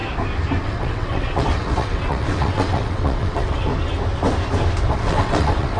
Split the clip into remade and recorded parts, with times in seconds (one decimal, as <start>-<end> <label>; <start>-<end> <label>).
0.0-0.6 recorded; 0.6-3.7 remade; 3.7-4.9 recorded; 4.9-5.8 remade